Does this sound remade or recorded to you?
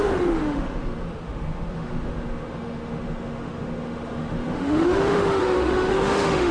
remade